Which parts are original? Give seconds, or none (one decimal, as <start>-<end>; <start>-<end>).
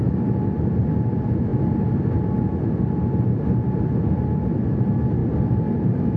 none